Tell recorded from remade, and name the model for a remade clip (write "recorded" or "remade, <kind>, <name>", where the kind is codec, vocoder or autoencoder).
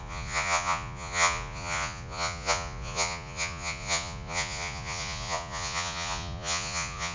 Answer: remade, vocoder, Vocos